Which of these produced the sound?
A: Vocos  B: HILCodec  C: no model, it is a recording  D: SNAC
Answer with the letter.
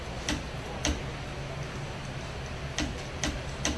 C